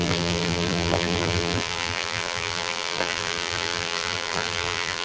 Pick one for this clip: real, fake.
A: fake